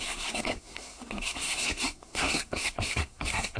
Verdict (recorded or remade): remade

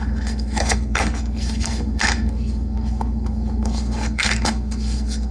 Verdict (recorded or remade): remade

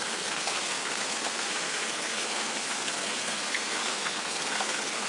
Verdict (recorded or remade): remade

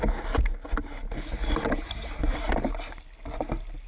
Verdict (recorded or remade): recorded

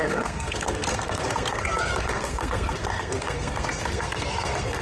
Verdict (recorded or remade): remade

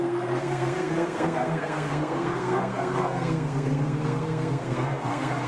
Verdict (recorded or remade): remade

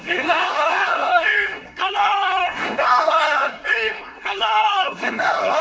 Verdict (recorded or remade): remade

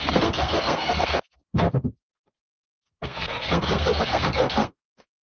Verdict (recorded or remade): remade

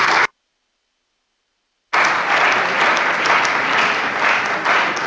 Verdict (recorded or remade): recorded